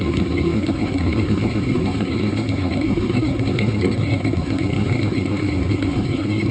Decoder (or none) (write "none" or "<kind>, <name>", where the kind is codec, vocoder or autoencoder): codec, SNAC